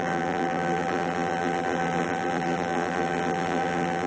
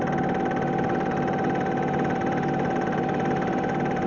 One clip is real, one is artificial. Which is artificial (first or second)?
first